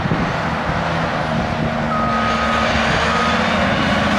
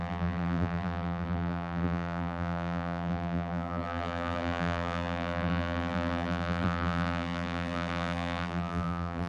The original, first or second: first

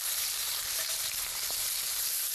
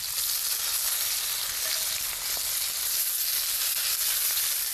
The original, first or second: second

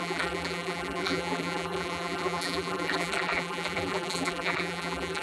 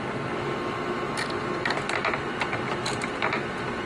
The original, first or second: second